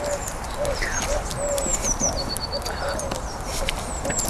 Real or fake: real